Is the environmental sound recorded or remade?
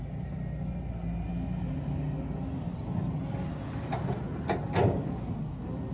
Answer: recorded